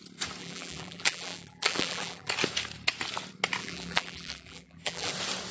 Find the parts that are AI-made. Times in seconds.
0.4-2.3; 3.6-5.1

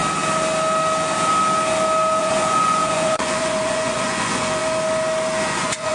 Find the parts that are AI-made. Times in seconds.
2.2-4.6; 5.4-5.9

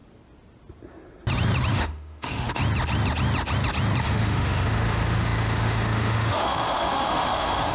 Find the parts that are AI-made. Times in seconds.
1.7-2.6; 4.0-7.7

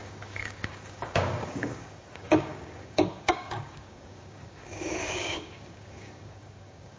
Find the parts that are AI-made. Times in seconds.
0.0-7.0